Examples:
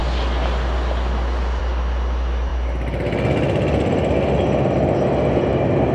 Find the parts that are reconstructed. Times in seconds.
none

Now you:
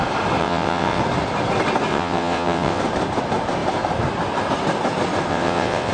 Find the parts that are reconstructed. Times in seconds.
0.4-1.0 (vocoder, WaveNeXt); 1.9-2.8; 5.3-5.9

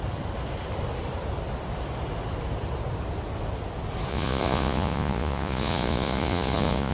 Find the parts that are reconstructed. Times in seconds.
4.1-6.9 (vocoder, Vocos)

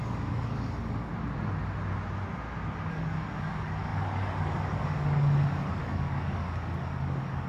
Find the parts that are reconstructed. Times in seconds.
0.0-1.1 (codec, DAC); 2.9-7.5

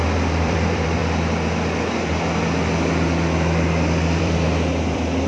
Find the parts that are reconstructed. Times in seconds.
0.0-1.0 (vocoder, BigVGAN v2); 4.2-5.3

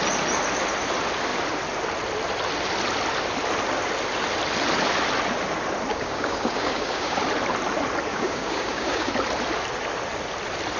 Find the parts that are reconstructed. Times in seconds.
5.9-7.2 (codec, DAC); 8.1-9.1

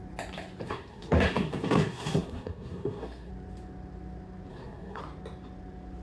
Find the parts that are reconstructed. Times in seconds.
0.6-3.3 (codec, SNAC); 4.5-5.0